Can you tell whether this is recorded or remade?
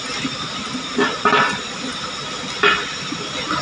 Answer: recorded